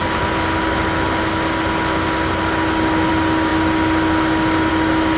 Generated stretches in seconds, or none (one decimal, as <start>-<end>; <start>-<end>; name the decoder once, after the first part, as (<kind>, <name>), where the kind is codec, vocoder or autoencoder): none